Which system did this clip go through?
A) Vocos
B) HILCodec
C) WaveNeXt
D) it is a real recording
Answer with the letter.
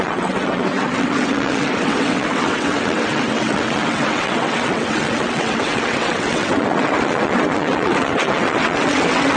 C